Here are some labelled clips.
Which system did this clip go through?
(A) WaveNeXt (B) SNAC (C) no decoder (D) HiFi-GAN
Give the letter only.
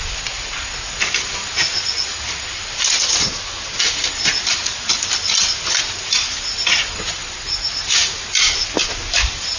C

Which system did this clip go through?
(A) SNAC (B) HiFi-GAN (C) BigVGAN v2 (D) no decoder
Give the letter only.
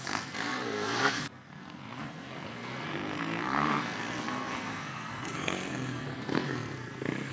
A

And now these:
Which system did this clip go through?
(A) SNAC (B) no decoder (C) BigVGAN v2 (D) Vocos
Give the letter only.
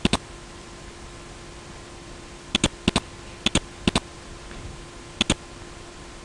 B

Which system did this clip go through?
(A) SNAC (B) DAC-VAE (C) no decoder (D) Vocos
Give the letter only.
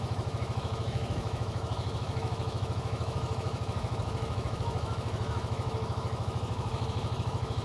B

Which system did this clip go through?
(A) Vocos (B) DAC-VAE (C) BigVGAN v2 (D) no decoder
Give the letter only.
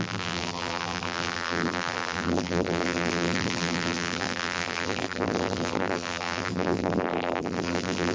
C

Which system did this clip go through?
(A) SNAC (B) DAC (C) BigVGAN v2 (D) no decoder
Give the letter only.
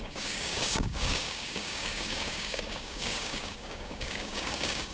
B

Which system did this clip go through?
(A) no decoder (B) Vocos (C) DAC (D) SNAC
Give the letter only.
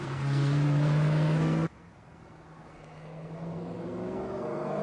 D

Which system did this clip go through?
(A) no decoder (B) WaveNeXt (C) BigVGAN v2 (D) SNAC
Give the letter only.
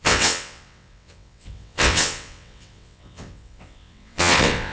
B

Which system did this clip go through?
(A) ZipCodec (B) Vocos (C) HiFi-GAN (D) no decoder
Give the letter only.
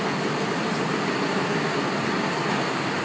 D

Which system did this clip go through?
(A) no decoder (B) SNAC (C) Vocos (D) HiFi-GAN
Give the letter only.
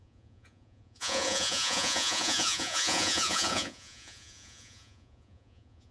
C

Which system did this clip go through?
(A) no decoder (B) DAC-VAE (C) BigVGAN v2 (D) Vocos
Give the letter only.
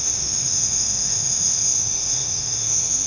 B